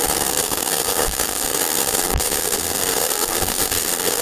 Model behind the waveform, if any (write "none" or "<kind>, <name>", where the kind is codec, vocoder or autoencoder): codec, SNAC